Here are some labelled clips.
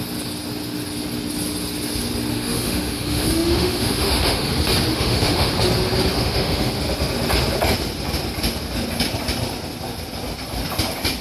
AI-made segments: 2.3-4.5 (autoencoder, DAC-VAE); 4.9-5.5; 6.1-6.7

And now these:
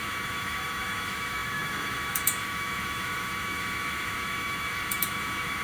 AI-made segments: 0.0-5.6 (autoencoder, DAC-VAE)

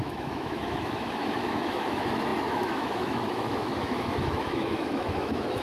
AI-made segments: 0.0-5.6 (autoencoder, DAC-VAE)